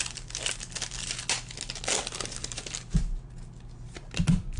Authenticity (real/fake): real